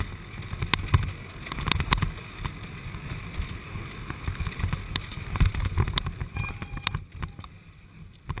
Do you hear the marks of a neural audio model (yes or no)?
no